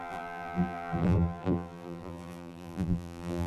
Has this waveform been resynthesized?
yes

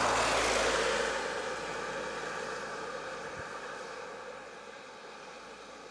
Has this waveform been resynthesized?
no